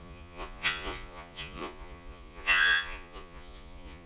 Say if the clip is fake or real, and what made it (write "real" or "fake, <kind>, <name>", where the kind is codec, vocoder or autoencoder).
fake, vocoder, Vocos